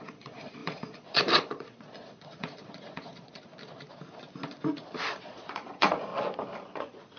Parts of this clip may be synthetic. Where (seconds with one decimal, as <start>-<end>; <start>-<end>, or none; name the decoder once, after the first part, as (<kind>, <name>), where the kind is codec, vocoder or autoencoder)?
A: 0.0-3.5 (vocoder, Vocos); 5.1-6.1; 6.8-7.2